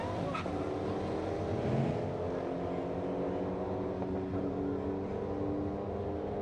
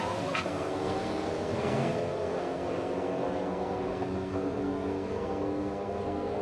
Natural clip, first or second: first